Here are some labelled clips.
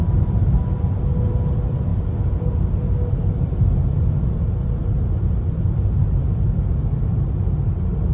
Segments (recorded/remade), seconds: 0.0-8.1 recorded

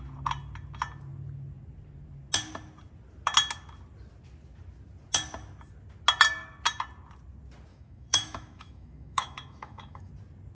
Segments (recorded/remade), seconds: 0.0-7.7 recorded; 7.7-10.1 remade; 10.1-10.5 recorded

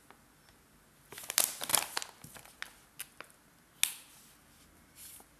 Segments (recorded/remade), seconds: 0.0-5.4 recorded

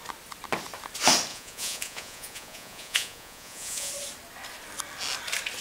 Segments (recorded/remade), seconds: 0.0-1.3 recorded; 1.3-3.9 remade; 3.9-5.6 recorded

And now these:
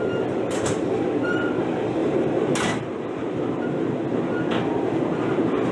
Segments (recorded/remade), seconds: 0.0-2.0 recorded; 2.0-3.4 remade; 3.4-5.7 recorded

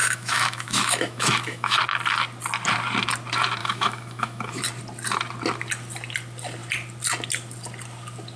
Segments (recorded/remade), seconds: 0.0-1.8 remade; 1.8-3.6 recorded; 3.6-4.6 remade; 4.6-8.4 recorded

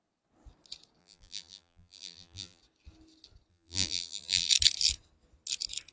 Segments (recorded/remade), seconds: 0.0-1.0 recorded; 1.0-2.6 remade; 2.6-3.5 recorded; 3.5-4.5 remade; 4.5-5.9 recorded

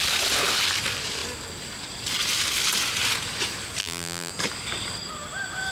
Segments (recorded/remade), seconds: 0.0-3.8 recorded; 3.8-4.3 remade; 4.3-5.7 recorded